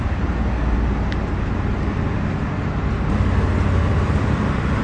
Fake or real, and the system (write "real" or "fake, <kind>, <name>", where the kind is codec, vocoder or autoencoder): real